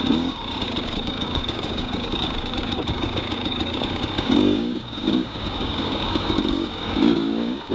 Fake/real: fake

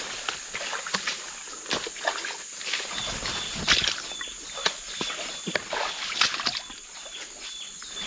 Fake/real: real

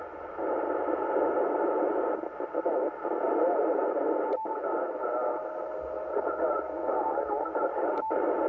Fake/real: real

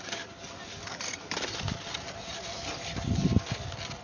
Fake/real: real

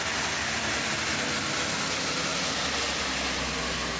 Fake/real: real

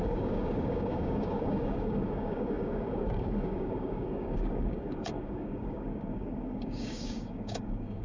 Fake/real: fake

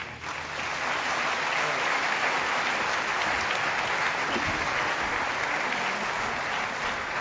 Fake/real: real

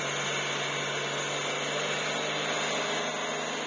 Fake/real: real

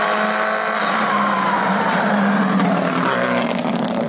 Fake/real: real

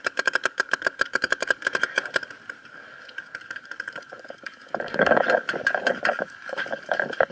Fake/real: fake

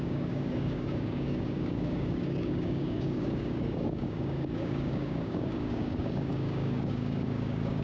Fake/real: fake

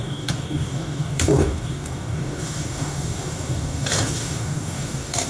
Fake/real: fake